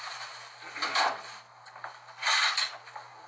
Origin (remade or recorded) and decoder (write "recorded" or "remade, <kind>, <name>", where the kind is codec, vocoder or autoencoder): recorded